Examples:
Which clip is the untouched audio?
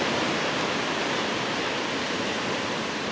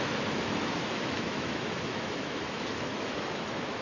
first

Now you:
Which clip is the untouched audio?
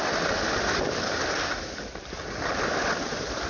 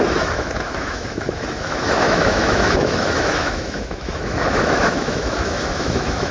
first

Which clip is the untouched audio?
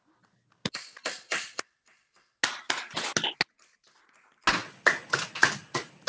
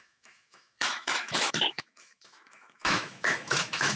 first